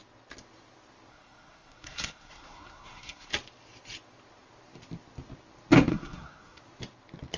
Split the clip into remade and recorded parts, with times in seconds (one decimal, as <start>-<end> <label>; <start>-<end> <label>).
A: 0.0-1.1 recorded; 1.1-3.3 remade; 3.3-5.9 recorded; 5.9-6.6 remade; 6.6-7.4 recorded